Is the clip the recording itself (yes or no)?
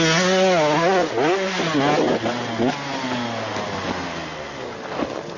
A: yes